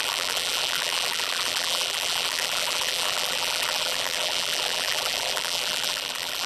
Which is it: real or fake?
fake